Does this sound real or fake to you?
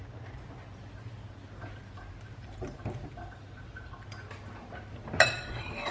real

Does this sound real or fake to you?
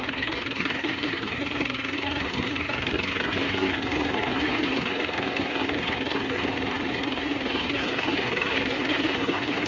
fake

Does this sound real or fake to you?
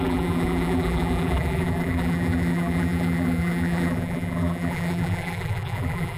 fake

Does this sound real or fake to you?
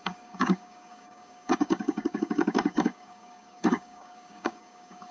fake